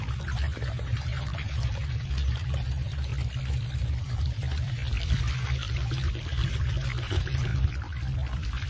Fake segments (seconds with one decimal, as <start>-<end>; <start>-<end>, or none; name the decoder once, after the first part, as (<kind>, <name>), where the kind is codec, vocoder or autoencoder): 0.0-3.1 (vocoder, BigVGAN v2); 3.8-4.8; 5.7-7.5